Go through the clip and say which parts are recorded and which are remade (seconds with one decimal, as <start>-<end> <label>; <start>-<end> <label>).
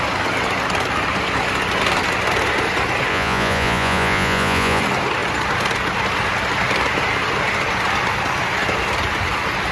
0.0-3.1 recorded; 3.1-4.8 remade; 4.8-9.7 recorded